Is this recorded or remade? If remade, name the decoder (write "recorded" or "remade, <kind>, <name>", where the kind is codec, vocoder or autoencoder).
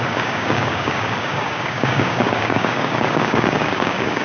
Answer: remade, codec, DAC